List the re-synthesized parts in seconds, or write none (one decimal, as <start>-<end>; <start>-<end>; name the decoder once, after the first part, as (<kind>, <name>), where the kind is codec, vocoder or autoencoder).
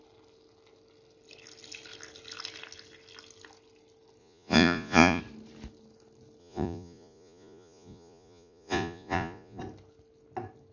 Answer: 4.2-5.2 (vocoder, Vocos); 6.4-9.6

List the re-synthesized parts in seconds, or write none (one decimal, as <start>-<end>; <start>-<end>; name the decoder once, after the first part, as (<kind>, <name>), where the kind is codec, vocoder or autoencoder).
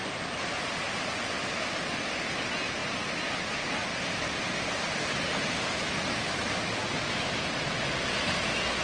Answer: none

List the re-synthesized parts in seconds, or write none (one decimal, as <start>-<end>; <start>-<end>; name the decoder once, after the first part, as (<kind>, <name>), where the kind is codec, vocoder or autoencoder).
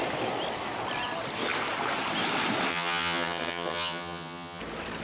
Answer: 2.7-4.6 (vocoder, HiFi-GAN)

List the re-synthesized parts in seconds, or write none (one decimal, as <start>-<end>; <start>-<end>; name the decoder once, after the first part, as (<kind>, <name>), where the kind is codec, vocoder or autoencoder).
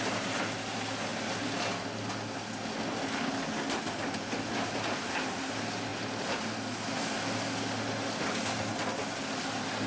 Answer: none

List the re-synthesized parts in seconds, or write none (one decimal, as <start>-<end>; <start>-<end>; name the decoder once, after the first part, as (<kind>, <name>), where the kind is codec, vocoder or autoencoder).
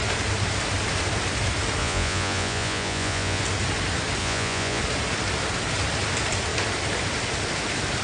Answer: 1.8-3.4 (vocoder, Vocos); 4.2-4.8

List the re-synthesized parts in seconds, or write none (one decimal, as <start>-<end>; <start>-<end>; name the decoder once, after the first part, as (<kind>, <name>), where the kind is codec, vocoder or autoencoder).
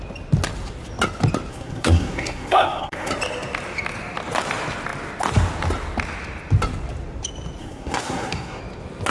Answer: 1.5-3.1 (codec, SNAC); 7.6-8.6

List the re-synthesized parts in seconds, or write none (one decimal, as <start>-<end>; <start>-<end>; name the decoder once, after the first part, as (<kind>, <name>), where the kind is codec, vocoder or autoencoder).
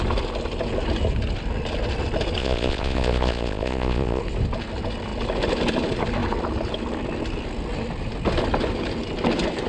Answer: 2.4-4.2 (vocoder, Vocos)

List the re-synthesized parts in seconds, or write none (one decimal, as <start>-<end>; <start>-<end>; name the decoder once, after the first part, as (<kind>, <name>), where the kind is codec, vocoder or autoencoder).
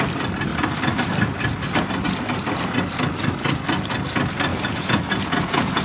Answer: 4.5-5.8 (vocoder, Vocos)